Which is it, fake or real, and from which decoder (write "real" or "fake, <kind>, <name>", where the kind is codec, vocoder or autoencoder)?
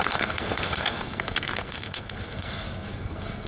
fake, codec, SNAC